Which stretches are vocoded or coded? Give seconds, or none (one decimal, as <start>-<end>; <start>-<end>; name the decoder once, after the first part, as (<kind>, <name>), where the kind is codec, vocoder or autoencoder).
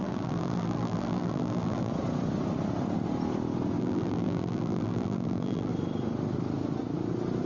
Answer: 0.0-1.9 (vocoder, BigVGAN v2); 3.8-5.7